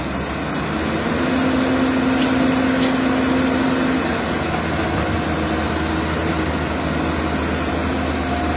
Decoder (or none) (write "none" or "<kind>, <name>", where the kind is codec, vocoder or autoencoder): none